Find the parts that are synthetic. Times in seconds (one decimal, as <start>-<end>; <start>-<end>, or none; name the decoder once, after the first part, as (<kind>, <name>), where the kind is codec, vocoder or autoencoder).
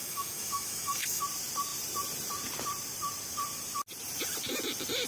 0.0-1.2 (autoencoder, DAC-VAE)